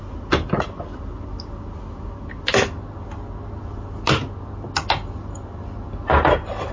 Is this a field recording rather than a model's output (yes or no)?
yes